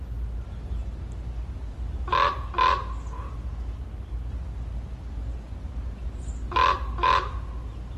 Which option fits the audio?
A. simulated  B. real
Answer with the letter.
B